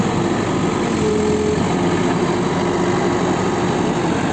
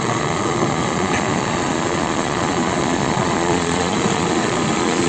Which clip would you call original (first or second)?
first